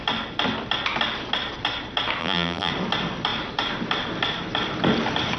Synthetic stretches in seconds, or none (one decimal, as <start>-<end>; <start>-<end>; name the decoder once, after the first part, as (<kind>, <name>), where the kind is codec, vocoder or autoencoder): 2.2-2.7 (vocoder, BigVGAN v2)